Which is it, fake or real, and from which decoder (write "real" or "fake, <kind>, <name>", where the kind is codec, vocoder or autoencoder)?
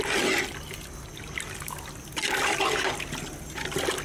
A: real